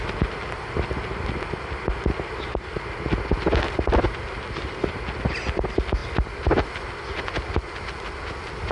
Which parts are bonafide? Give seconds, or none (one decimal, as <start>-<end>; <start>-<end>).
0.0-8.7